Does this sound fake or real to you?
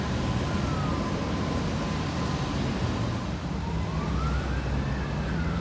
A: real